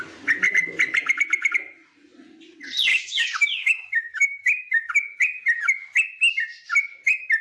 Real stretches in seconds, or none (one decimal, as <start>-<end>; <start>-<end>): 0.0-2.9; 4.9-7.4